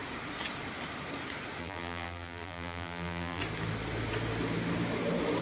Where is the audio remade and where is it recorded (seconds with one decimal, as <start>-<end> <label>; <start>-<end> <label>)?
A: 0.0-1.6 recorded; 1.6-3.4 remade; 3.4-5.4 recorded